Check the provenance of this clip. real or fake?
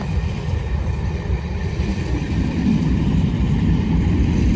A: fake